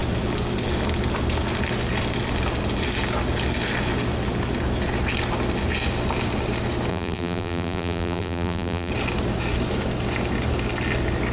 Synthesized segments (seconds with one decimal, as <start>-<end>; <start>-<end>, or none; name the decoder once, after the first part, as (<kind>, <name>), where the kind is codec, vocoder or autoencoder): 6.9-8.9 (vocoder, BigVGAN v2)